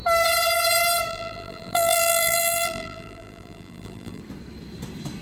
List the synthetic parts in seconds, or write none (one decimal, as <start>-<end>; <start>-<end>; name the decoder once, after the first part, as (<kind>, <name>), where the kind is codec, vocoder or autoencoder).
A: 1.1-4.2 (vocoder, BigVGAN v2)